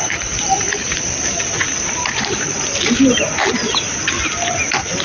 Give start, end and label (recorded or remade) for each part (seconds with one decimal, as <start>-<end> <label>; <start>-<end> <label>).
0.0-5.0 recorded